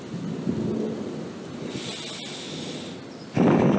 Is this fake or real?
real